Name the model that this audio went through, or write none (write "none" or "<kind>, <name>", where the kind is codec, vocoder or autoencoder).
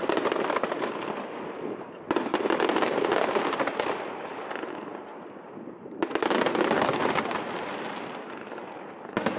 none